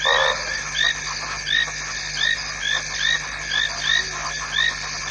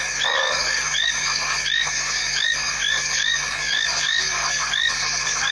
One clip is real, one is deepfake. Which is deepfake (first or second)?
second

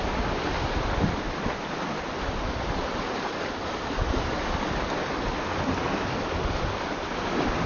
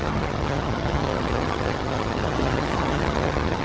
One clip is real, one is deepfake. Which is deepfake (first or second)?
second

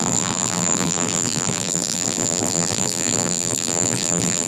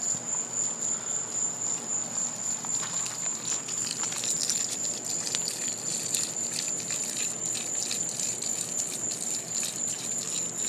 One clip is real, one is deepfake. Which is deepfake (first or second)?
first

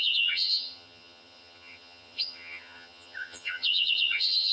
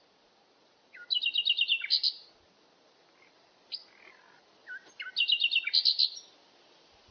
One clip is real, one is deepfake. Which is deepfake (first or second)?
first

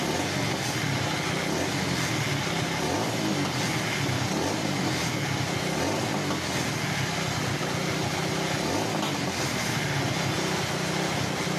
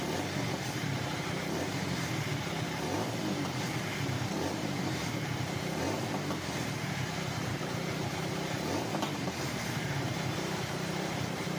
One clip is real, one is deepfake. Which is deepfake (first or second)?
second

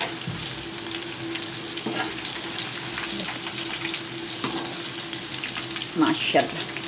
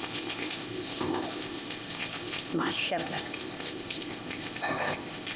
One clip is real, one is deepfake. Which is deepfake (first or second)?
second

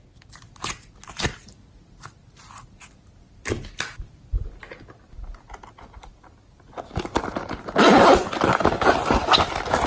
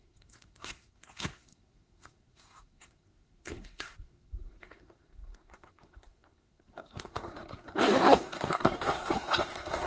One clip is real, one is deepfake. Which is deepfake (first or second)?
second